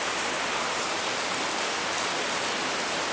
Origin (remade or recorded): recorded